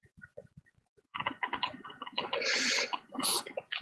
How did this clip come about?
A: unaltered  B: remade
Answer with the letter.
B